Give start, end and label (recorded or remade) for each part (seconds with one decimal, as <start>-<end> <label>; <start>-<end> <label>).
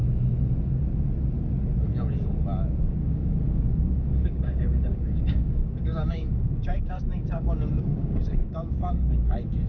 0.0-2.8 recorded; 2.8-9.7 remade